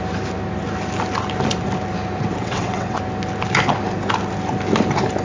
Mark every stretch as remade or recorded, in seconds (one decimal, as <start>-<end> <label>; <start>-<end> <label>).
0.0-2.4 recorded; 2.4-3.0 remade; 3.0-5.2 recorded